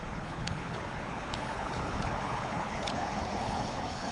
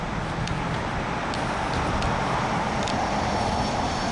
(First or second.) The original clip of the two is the second